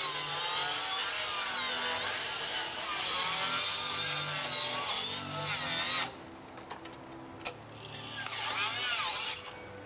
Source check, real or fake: real